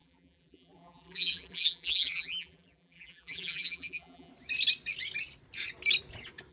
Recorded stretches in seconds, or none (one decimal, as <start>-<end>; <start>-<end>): 4.3-6.5